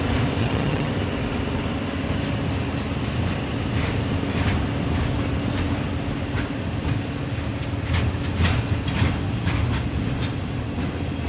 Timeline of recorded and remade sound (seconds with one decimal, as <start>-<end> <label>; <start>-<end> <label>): 0.0-0.4 recorded; 0.4-0.9 remade; 0.9-11.3 recorded